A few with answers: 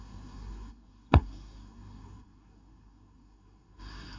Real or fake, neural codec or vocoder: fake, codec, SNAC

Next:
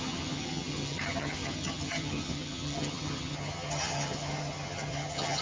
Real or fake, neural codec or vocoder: fake, vocoder, HiFi-GAN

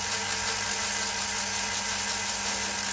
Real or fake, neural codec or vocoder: real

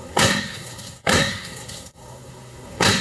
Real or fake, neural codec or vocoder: fake, codec, SNAC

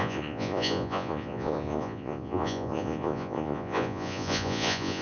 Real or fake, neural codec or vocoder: fake, vocoder, Vocos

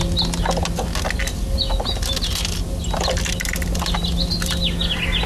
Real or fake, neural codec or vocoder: real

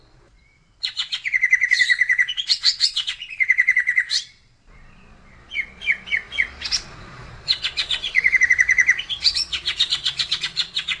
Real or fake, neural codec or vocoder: fake, vocoder, Vocos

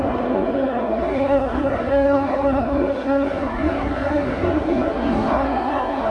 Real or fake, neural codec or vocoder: fake, codec, SNAC